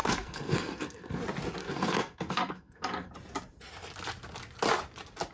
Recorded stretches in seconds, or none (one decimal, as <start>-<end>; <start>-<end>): 1.2-1.6; 3.1-5.3